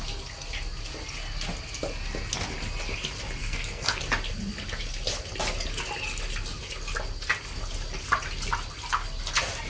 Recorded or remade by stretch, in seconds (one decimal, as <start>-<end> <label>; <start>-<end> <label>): 0.0-3.4 recorded; 3.4-4.0 remade; 4.0-9.7 recorded